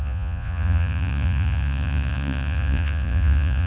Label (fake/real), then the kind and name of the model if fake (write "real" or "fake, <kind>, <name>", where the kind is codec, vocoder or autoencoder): fake, vocoder, Vocos